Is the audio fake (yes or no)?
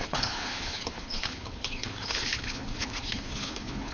yes